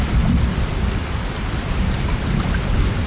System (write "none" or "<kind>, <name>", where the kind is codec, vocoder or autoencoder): vocoder, BigVGAN v2